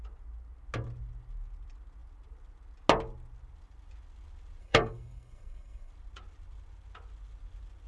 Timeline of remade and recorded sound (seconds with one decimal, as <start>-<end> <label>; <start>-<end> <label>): 0.0-4.6 recorded; 4.6-5.9 remade; 5.9-7.9 recorded